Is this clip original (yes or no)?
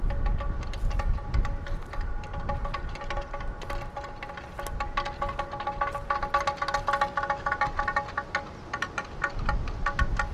yes